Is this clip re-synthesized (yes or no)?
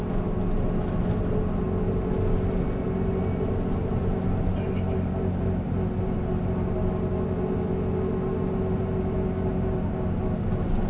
no